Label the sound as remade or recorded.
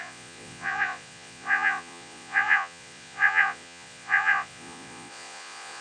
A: remade